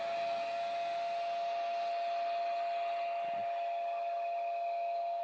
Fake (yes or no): no